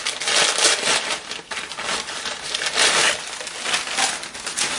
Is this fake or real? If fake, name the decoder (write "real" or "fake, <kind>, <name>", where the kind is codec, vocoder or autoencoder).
real